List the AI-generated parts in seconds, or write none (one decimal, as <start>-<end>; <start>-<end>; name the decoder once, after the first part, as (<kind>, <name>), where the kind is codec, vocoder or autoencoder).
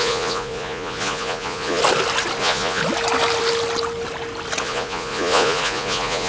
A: 0.0-1.8 (vocoder, Vocos); 2.4-2.8; 4.6-6.3